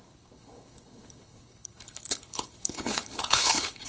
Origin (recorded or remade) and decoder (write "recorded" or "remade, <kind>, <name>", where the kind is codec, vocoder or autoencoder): remade, codec, HILCodec